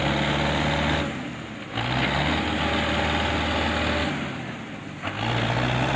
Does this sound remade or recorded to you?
recorded